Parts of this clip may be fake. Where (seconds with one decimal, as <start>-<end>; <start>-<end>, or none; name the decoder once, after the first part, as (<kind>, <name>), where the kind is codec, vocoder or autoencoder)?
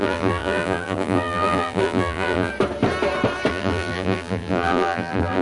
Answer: 0.0-2.5 (vocoder, BigVGAN v2); 3.5-5.4